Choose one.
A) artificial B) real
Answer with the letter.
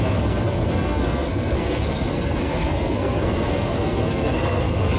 A